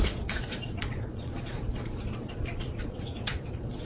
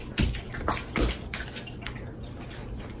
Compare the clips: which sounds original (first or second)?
second